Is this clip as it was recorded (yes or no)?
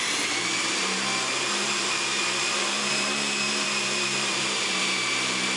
no